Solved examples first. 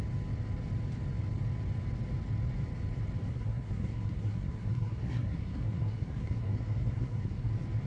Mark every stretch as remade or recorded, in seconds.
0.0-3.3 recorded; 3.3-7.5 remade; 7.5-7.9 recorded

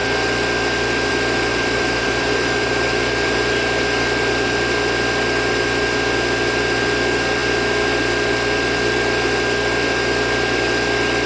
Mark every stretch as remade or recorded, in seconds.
0.0-1.5 recorded; 1.5-3.5 remade; 3.5-11.3 recorded

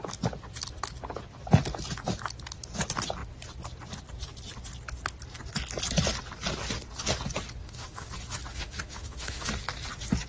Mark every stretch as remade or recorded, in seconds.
0.0-7.6 recorded; 7.6-8.1 remade; 8.1-8.5 recorded; 8.5-9.5 remade; 9.5-10.3 recorded

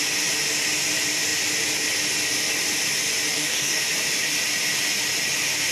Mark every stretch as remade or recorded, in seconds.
0.0-3.3 recorded; 3.3-3.8 remade; 3.8-5.7 recorded